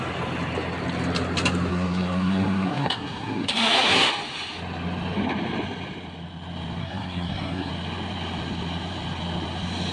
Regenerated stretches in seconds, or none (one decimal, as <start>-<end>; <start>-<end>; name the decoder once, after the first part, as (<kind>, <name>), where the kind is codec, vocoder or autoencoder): 1.7-4.1 (codec, SNAC); 6.8-7.7